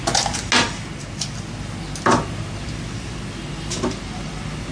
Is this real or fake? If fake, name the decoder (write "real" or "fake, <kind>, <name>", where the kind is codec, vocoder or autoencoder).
real